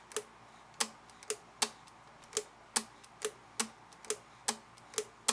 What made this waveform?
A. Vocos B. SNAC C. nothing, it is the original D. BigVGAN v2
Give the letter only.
C